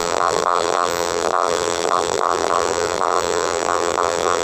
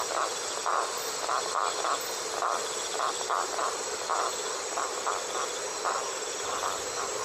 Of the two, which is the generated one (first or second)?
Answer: first